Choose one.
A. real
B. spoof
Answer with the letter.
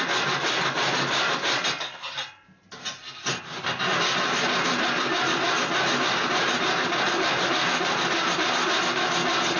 A